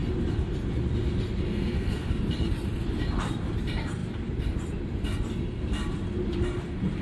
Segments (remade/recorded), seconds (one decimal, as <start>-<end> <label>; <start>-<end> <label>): 0.0-1.5 recorded; 1.5-2.1 remade; 2.1-7.0 recorded